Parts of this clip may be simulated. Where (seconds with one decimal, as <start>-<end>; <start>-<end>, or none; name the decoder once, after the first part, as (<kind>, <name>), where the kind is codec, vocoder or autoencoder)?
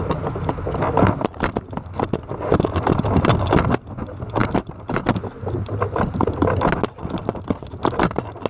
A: 4.4-5.0 (vocoder, BigVGAN v2)